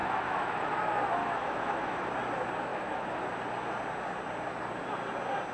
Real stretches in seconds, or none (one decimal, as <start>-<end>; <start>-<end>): 0.7-1.2; 2.1-2.7; 3.2-5.5